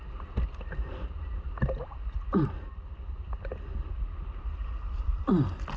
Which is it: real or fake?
real